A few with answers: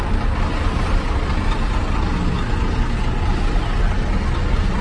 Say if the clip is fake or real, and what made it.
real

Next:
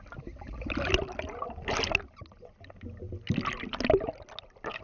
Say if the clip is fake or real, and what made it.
real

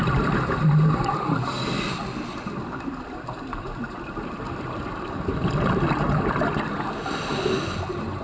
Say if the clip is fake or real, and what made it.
fake, vocoder, BigVGAN v2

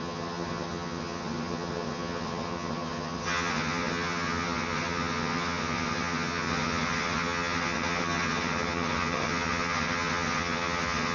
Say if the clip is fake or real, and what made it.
fake, vocoder, HiFi-GAN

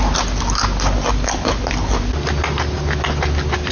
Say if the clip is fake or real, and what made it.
real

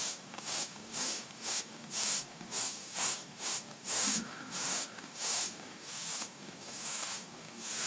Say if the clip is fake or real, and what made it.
fake, codec, DAC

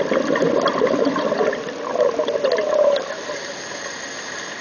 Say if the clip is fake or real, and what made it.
real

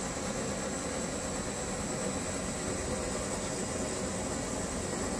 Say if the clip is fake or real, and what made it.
real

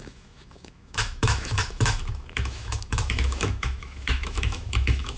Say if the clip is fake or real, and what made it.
fake, autoencoder, DAC-VAE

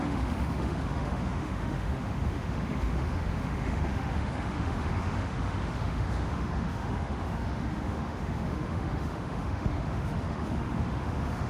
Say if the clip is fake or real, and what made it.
fake, autoencoder, DAC-VAE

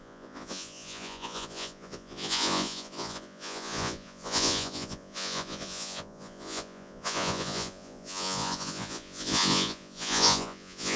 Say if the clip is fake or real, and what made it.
fake, vocoder, Vocos